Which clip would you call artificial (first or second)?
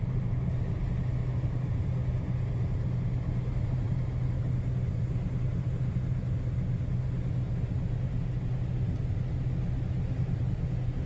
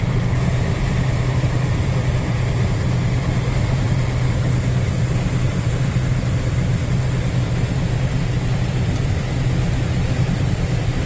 second